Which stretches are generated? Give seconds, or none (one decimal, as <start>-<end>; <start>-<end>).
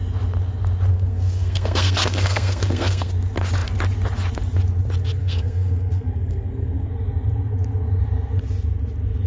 0.9-3.1; 5.2-6.9